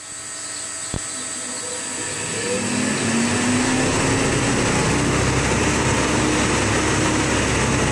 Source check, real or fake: real